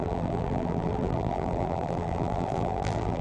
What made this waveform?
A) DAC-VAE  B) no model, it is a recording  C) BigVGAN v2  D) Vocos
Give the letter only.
C